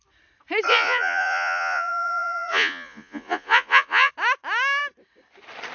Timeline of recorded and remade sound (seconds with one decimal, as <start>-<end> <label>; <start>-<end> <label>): 0.0-0.7 recorded; 0.7-4.1 remade; 4.1-5.7 recorded